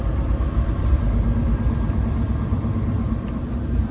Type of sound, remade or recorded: remade